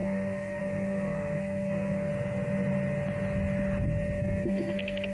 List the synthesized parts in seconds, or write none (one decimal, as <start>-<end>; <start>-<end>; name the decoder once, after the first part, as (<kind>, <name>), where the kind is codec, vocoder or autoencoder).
0.0-2.1 (codec, SNAC); 4.2-5.1